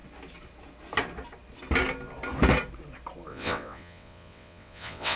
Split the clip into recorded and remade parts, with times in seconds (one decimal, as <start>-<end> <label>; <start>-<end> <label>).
0.0-3.3 recorded; 3.3-5.2 remade